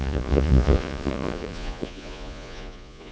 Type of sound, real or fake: fake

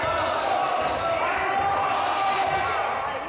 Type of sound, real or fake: real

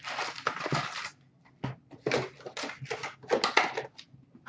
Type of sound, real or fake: real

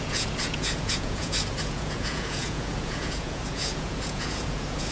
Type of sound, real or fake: fake